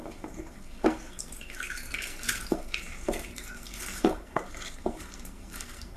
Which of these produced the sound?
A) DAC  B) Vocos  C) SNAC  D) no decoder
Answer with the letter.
C